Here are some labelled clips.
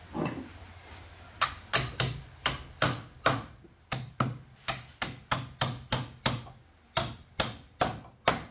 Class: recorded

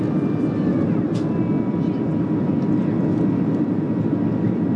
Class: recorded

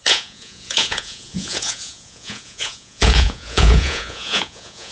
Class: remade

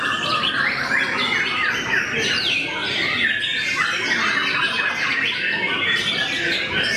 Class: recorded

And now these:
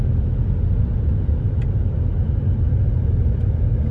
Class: recorded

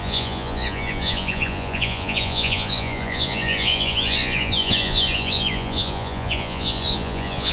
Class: remade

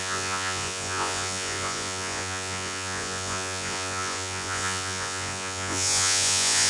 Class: remade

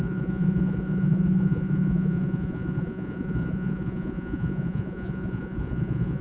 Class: remade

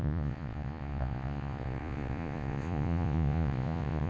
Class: remade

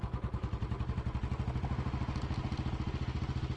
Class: recorded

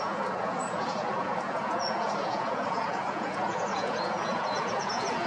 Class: remade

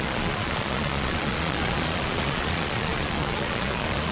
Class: remade